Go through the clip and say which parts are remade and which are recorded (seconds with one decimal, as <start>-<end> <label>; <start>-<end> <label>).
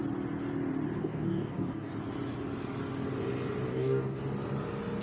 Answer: 0.0-1.0 recorded; 1.0-1.9 remade; 1.9-3.7 recorded; 3.7-4.2 remade; 4.2-5.0 recorded